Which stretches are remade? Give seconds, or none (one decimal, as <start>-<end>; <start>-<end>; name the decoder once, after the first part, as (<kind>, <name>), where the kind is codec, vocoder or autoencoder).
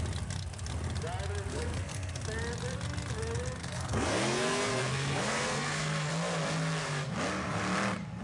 1.5-2.2 (codec, SNAC); 3.6-6.1